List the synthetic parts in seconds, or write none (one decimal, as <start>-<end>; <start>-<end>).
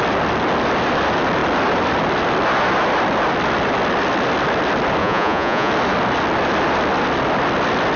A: 5.0-5.7